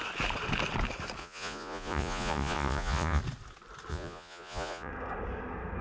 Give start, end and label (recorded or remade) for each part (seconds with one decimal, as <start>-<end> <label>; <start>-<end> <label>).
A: 0.0-1.2 recorded; 1.2-3.2 remade; 3.2-3.9 recorded; 3.9-4.9 remade; 4.9-5.8 recorded

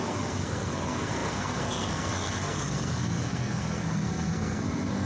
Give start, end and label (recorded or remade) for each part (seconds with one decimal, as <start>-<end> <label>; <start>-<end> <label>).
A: 0.0-5.1 remade

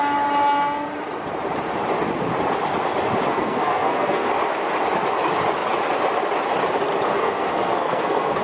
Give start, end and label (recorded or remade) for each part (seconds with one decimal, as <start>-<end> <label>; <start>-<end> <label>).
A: 0.0-3.3 recorded; 3.3-4.3 remade; 4.3-7.1 recorded; 7.1-8.4 remade

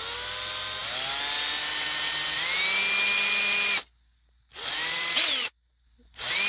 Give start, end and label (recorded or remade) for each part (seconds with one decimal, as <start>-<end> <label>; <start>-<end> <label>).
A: 0.0-6.5 recorded

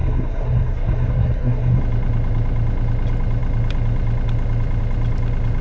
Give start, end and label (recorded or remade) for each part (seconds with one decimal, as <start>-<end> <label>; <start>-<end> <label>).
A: 0.0-1.8 remade; 1.8-5.6 recorded

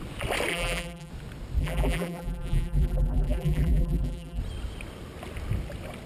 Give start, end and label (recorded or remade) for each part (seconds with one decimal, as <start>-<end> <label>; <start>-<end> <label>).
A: 0.0-0.5 recorded; 0.5-1.1 remade; 1.1-1.6 recorded; 1.6-4.4 remade; 4.4-6.1 recorded